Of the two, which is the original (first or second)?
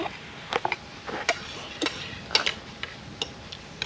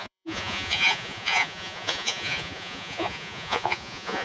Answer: first